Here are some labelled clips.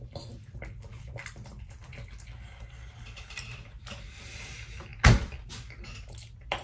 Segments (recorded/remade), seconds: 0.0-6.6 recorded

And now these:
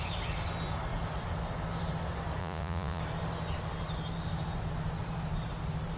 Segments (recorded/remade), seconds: 0.0-2.4 recorded; 2.4-3.0 remade; 3.0-6.0 recorded

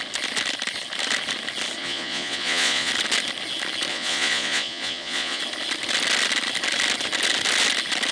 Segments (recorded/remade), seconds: 0.0-1.8 recorded; 1.8-2.9 remade; 2.9-3.9 recorded; 3.9-5.4 remade; 5.4-8.1 recorded

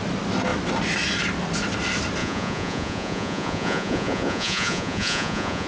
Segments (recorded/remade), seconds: 0.0-2.2 recorded; 2.2-5.7 remade

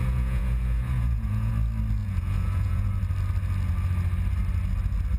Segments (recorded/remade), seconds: 0.0-1.5 remade; 1.5-2.0 recorded; 2.0-2.9 remade; 2.9-5.2 recorded

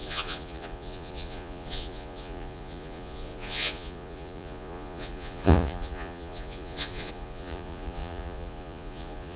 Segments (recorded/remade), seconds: 0.0-9.4 remade

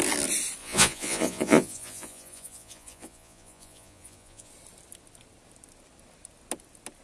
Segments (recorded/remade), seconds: 0.0-0.6 recorded; 0.6-4.5 remade; 4.5-7.0 recorded